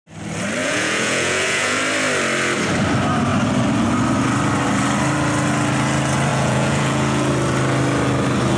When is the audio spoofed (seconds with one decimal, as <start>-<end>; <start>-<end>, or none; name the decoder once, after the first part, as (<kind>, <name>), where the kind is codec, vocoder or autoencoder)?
0.6-1.8 (vocoder, Vocos); 6.3-7.3